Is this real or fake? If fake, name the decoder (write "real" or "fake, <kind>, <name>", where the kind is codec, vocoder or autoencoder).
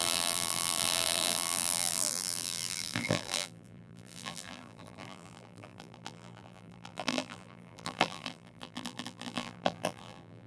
fake, vocoder, BigVGAN v2